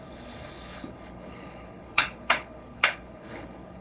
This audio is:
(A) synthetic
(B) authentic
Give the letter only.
A